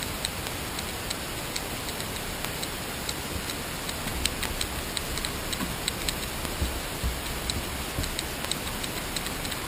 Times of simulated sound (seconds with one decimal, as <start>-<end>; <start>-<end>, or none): none